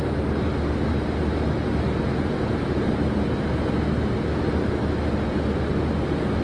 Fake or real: real